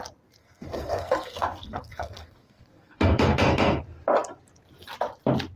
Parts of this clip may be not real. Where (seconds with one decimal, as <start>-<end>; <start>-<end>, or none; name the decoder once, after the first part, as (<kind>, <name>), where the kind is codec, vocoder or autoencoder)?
0.4-3.8 (codec, SNAC)